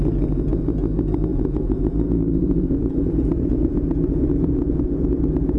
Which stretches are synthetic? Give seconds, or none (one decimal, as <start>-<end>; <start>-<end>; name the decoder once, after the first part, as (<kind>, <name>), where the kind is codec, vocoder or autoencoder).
1.3-4.7 (vocoder, Vocos)